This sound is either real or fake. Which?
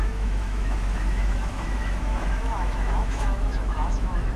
fake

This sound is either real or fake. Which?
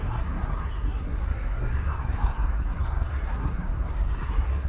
fake